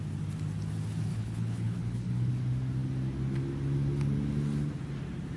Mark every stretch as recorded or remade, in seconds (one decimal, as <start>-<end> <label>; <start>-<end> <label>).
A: 0.0-1.1 recorded; 1.1-2.3 remade; 2.3-5.4 recorded